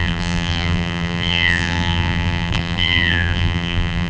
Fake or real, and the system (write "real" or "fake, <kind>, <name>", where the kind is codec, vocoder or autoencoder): fake, vocoder, BigVGAN v2